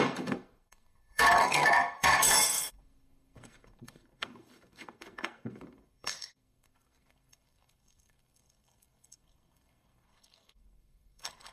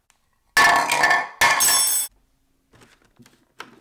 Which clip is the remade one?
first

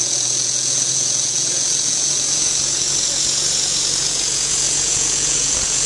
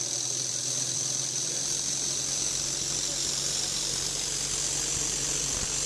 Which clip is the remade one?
first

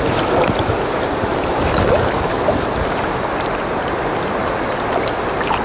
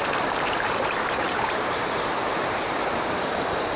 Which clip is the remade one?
second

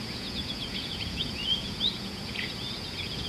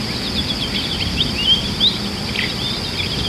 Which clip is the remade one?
first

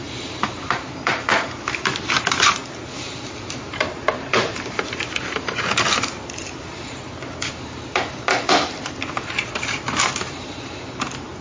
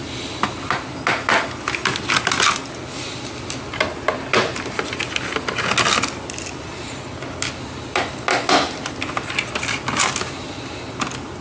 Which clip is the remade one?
first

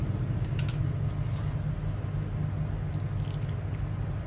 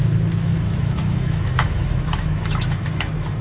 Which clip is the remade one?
second